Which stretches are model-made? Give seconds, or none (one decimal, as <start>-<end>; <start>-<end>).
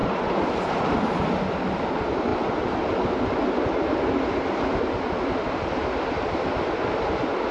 none